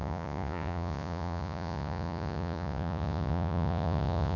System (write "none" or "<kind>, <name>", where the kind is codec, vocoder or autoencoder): vocoder, Vocos